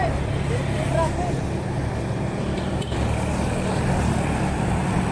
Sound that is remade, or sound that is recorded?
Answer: recorded